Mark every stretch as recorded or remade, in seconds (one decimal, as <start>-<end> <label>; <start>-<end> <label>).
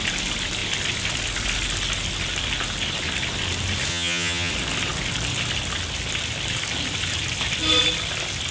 0.0-3.9 recorded; 3.9-4.5 remade; 4.5-8.5 recorded